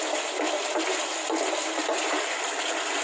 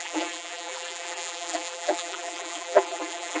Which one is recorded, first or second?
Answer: first